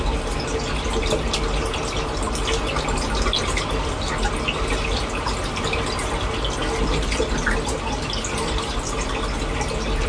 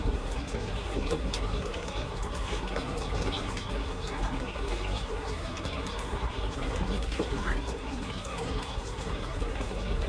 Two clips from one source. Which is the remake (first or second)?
second